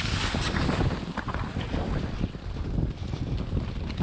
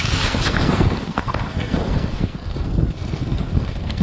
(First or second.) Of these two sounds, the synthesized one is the second